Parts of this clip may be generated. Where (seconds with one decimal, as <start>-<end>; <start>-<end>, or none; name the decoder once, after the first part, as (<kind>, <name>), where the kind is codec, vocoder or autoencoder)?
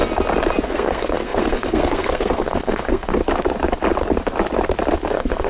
0.6-3.2 (codec, SNAC); 5.1-5.5